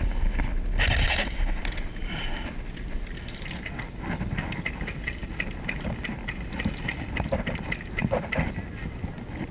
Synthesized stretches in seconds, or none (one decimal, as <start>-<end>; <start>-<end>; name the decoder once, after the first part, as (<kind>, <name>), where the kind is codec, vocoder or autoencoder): 1.0-1.6 (codec, DAC)